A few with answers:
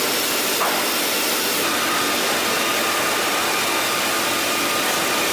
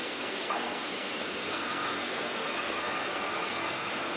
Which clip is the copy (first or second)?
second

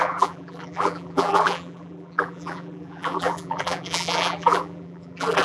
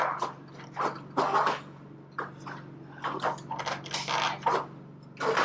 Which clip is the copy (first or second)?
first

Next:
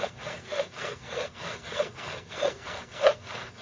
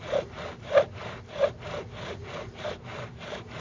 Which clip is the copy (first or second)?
first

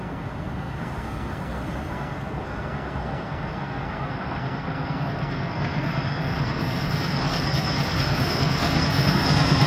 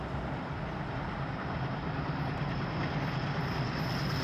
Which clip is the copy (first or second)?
first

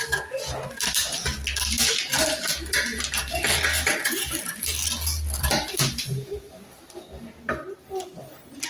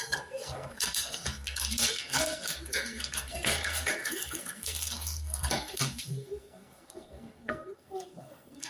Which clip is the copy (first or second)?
second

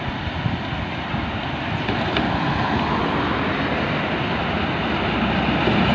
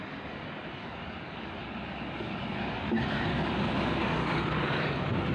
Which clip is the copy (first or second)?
second